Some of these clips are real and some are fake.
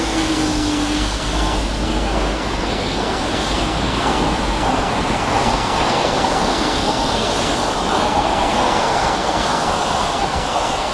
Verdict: fake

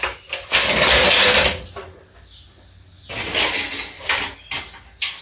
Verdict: real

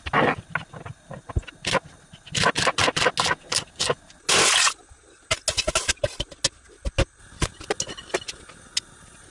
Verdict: real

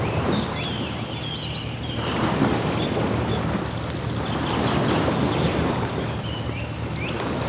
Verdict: real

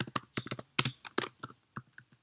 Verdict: real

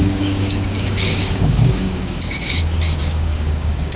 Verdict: fake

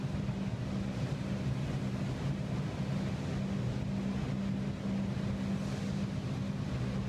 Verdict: real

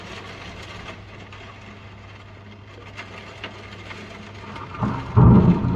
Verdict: real